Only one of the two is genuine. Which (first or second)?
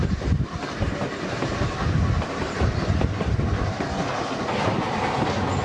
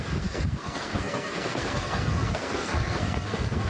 first